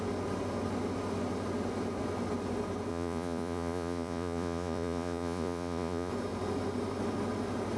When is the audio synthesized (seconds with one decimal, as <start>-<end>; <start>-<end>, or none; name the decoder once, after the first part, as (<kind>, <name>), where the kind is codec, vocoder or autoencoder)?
2.9-6.1 (vocoder, Vocos)